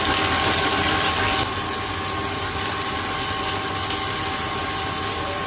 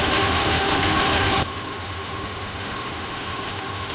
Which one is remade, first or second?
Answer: second